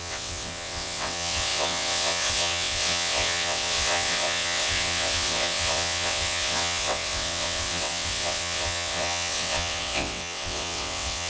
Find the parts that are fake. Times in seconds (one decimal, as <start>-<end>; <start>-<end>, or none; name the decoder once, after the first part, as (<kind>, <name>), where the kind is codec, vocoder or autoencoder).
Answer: 0.0-11.3 (vocoder, WaveNeXt)